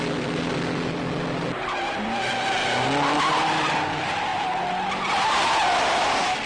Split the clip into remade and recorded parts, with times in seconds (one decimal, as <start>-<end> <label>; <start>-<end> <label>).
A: 0.0-6.5 recorded